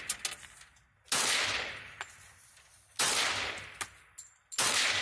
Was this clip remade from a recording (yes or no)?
no